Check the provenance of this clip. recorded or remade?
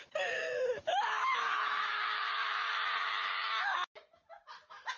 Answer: remade